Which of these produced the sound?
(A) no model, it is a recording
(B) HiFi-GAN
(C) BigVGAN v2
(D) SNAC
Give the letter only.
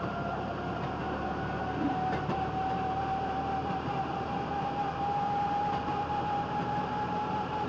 C